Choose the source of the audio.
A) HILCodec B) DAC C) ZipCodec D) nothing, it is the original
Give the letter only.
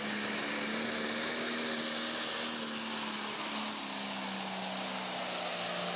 D